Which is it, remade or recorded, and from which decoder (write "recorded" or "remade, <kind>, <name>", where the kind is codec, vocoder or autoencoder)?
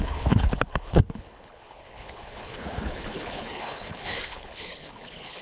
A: remade, codec, HILCodec